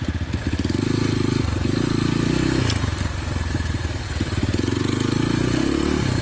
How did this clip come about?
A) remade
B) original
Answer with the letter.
B